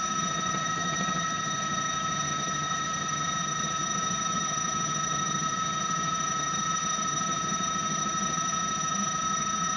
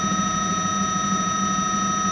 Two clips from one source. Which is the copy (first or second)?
first